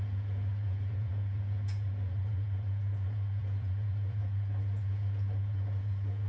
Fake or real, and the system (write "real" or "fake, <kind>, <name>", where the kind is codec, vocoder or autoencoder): fake, vocoder, Vocos